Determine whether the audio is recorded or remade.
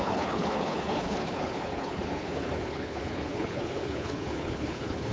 remade